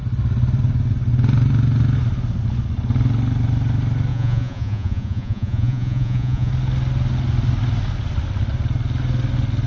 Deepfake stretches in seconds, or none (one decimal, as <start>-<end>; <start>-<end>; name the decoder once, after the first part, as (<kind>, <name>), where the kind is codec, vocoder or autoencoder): 4.1-6.5 (vocoder, Vocos)